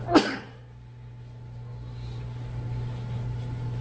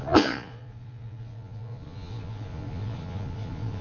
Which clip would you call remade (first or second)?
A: second